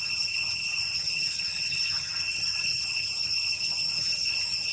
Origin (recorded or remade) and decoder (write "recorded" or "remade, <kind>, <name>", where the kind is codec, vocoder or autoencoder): remade, vocoder, HiFi-GAN